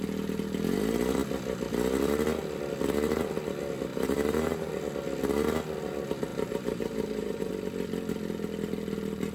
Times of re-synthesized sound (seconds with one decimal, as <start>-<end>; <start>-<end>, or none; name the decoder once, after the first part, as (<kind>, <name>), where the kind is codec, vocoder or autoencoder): 3.9-4.7 (vocoder, BigVGAN v2); 6.3-7.5